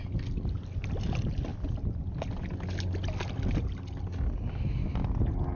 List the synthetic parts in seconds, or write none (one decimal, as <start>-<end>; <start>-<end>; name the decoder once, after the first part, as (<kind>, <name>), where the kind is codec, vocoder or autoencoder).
none